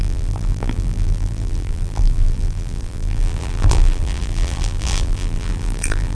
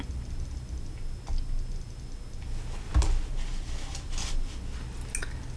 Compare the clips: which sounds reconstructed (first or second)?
first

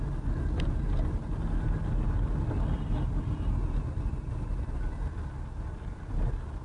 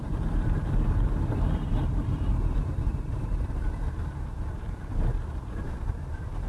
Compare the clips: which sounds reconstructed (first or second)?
second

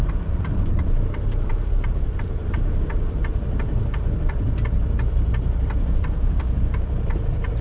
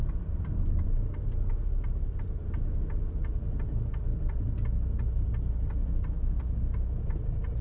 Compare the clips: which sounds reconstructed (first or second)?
first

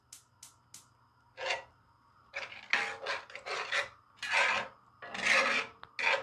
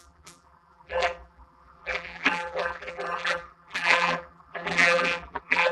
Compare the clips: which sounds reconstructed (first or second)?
second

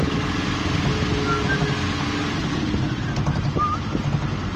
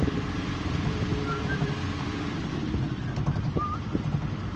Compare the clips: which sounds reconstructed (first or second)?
second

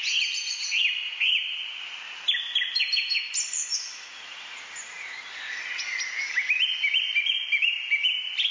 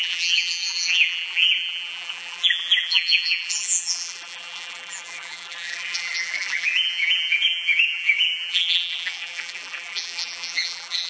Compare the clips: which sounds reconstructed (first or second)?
second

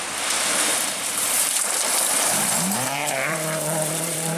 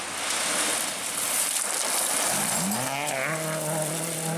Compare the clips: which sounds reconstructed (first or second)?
first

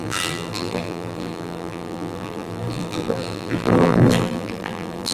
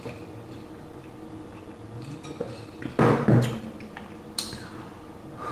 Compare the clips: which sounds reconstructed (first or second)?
first